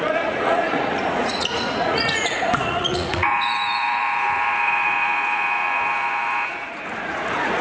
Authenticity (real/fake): fake